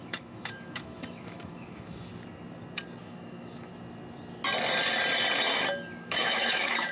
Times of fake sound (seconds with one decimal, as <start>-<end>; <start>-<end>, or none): 0.0-2.1; 3.0-3.7; 6.0-6.9